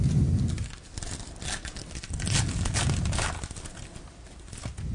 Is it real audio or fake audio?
real